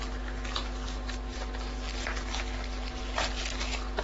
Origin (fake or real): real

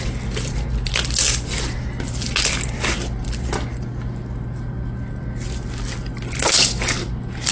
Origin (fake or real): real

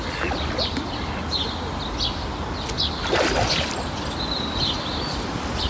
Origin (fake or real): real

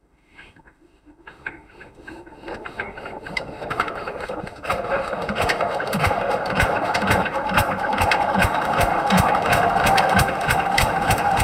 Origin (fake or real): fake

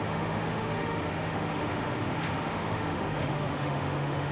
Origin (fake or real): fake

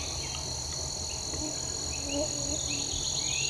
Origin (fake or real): real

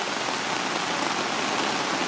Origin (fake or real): real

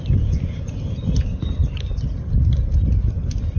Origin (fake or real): real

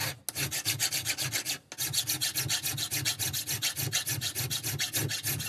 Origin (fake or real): real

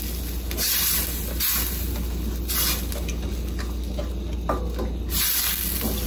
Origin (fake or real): real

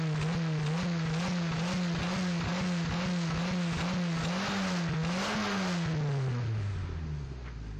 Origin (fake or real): real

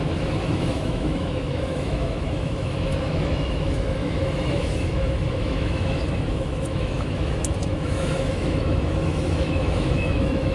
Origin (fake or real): fake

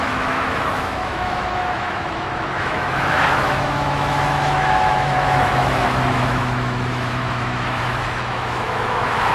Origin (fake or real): fake